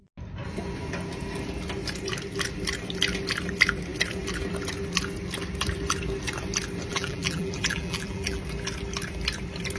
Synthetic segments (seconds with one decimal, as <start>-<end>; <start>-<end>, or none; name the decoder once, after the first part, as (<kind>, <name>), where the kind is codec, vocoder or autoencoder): 6.9-8.4 (vocoder, BigVGAN v2)